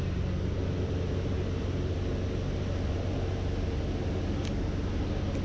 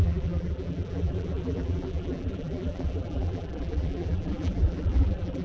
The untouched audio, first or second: first